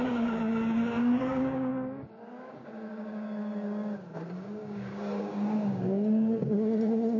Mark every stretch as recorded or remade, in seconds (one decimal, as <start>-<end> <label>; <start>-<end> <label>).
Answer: 0.0-7.2 remade